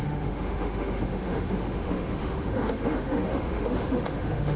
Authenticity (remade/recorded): remade